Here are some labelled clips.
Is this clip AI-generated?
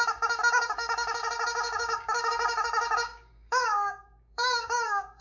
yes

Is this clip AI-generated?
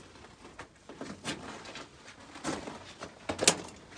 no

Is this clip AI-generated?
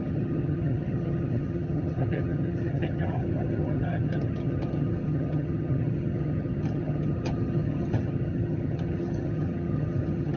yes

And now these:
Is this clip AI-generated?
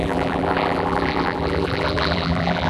yes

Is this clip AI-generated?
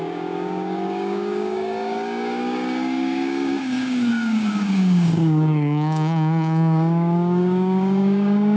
yes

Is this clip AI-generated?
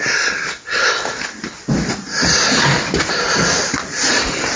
no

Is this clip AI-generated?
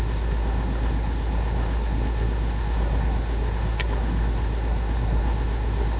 yes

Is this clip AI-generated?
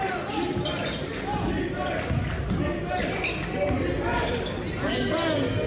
no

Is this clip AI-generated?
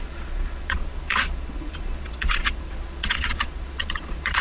yes